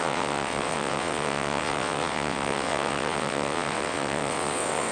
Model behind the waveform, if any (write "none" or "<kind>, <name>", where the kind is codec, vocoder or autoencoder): vocoder, WaveNeXt